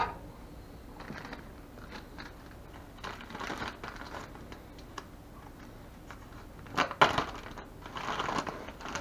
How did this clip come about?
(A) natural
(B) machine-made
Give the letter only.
A